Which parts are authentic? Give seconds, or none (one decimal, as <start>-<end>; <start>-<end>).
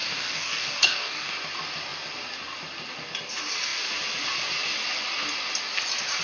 1.3-6.2